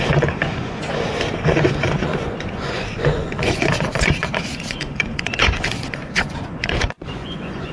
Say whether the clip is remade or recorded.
remade